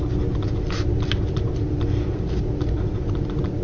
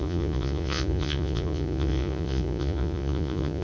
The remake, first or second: second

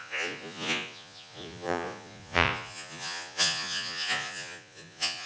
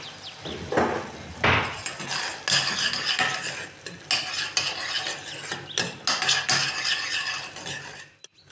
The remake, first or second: first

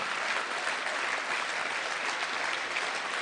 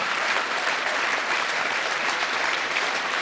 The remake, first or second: second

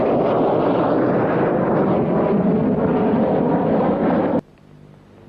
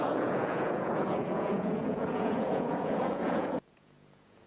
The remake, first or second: second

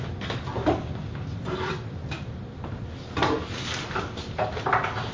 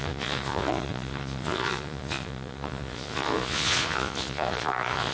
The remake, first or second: second